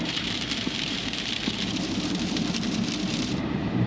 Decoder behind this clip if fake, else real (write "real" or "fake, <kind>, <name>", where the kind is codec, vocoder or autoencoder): fake, vocoder, BigVGAN v2